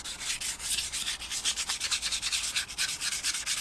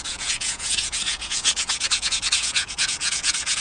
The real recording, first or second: first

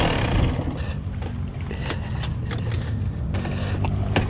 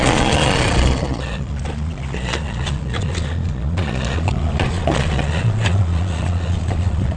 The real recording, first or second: first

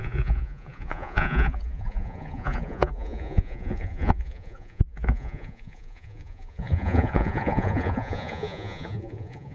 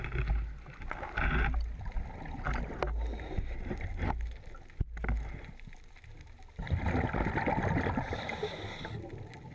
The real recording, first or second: second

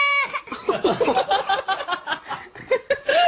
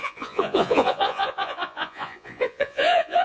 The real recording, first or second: first